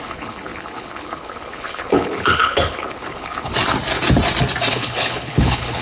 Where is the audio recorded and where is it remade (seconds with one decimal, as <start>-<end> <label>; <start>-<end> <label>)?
0.0-3.5 remade; 3.5-4.7 recorded; 4.7-5.8 remade